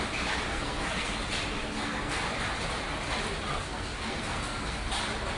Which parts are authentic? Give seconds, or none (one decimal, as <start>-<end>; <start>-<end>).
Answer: 0.0-0.5; 1.2-1.6; 2.2-3.5; 4.9-5.4